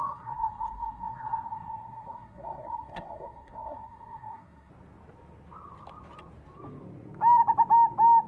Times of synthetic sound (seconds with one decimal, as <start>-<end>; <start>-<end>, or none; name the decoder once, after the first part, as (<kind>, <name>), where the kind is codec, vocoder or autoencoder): 0.0-4.7 (codec, SNAC)